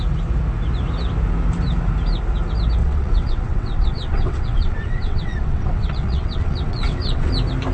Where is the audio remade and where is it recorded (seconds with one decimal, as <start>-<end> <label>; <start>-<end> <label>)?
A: 0.0-2.8 recorded; 2.8-7.3 remade; 7.3-7.7 recorded